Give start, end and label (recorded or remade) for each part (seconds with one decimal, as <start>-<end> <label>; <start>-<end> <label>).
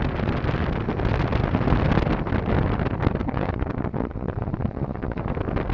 0.0-3.2 recorded; 3.2-5.2 remade; 5.2-5.7 recorded